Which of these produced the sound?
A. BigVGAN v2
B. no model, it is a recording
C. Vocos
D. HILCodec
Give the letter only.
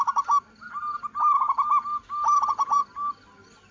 B